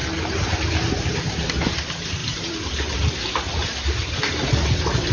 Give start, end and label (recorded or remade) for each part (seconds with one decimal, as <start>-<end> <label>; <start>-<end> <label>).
0.0-1.5 remade; 1.5-2.2 recorded; 2.2-4.2 remade; 4.2-5.1 recorded